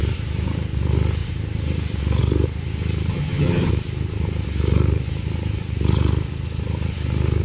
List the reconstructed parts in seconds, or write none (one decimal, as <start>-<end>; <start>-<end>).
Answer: 3.1-3.7